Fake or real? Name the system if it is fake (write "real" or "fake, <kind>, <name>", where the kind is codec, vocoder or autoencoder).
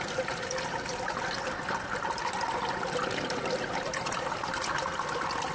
real